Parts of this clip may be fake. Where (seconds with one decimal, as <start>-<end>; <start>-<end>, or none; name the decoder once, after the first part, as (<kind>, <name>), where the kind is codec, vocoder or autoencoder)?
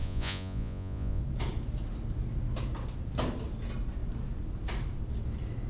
0.0-1.2 (vocoder, Vocos)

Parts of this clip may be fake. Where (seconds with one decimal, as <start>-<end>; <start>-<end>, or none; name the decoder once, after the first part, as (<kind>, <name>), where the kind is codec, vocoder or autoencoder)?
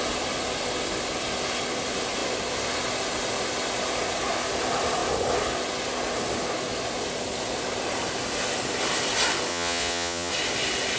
9.5-10.3 (vocoder, Vocos)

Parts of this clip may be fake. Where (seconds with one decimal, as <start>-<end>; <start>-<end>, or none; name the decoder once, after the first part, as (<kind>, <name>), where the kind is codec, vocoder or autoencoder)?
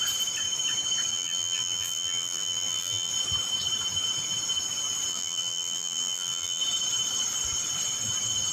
1.1-3.1 (vocoder, BigVGAN v2); 5.1-6.6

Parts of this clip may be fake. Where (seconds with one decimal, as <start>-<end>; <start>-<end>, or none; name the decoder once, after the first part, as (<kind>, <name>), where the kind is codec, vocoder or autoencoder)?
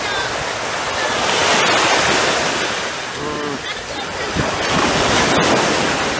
none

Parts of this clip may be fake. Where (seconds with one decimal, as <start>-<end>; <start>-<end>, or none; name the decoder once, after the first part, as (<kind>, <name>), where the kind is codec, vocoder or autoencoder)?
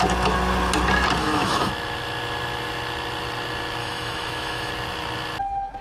1.2-1.7 (autoencoder, DAC-VAE); 3.8-4.7